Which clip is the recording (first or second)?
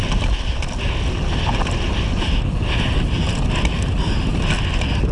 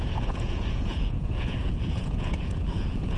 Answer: first